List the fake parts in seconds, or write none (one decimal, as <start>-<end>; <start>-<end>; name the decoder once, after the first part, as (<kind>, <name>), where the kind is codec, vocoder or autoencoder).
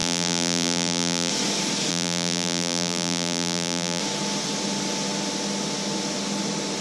0.0-1.3 (vocoder, BigVGAN v2); 1.9-4.0